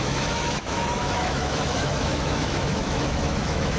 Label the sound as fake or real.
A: fake